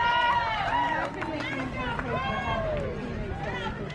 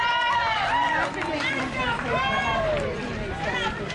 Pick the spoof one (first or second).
second